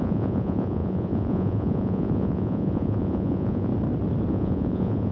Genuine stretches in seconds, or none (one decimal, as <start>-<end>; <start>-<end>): 3.7-4.3